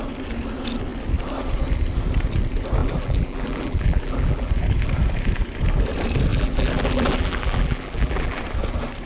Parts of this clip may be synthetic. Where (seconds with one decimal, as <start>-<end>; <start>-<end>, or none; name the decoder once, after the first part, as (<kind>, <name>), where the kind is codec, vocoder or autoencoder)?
2.8-4.5 (vocoder, BigVGAN v2); 6.3-8.4